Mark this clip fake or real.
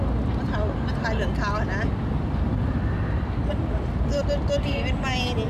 real